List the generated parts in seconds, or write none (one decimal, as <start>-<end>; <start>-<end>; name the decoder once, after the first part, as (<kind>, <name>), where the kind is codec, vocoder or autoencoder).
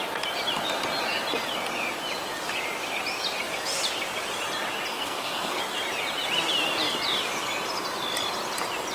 4.9-5.6 (codec, SNAC)